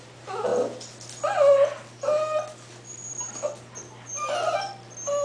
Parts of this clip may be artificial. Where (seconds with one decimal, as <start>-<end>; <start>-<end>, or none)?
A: none